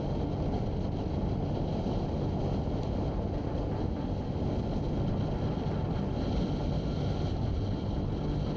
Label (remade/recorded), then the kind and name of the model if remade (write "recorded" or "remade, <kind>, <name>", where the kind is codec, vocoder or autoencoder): recorded